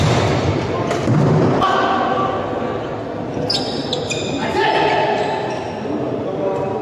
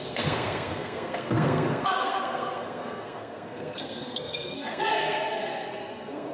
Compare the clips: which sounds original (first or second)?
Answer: first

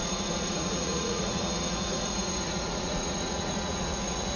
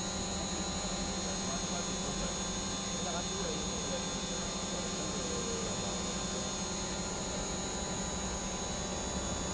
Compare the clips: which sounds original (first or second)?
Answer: second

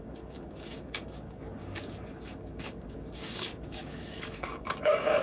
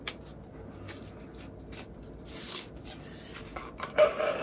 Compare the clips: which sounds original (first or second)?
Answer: second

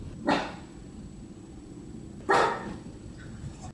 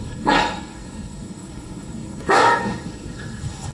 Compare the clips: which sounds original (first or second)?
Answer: first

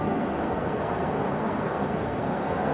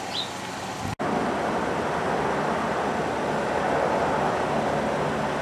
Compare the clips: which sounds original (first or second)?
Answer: second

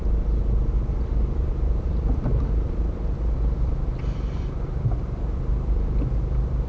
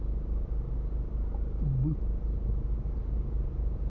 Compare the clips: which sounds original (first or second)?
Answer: second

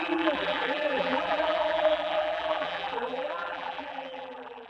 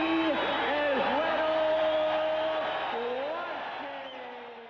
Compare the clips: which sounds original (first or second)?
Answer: second